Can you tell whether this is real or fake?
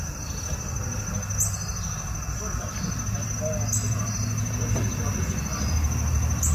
real